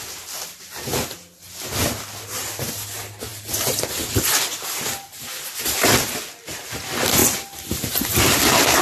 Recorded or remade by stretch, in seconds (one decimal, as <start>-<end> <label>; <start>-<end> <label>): 0.0-8.8 recorded